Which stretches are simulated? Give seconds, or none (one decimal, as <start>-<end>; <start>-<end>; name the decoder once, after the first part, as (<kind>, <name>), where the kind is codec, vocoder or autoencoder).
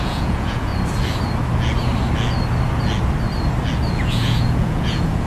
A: 0.0-0.7 (vocoder, Vocos); 3.9-5.3